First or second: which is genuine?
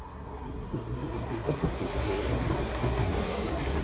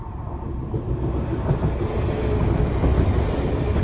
second